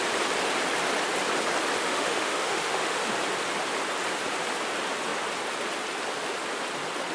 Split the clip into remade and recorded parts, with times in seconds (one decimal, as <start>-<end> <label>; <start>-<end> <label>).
0.0-1.8 recorded; 1.8-3.1 remade; 3.1-7.1 recorded